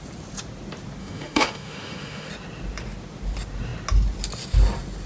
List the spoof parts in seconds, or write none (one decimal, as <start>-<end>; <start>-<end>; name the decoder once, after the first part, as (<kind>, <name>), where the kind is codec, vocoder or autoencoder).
1.0-2.3 (autoencoder, DAC-VAE)